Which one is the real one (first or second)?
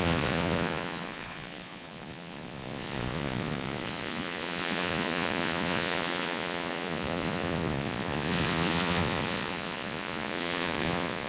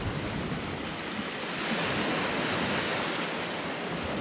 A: second